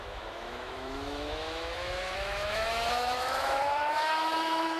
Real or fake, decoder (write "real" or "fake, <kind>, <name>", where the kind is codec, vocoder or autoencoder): fake, autoencoder, DAC-VAE